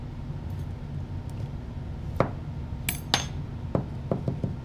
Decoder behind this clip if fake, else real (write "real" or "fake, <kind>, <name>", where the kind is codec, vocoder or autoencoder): real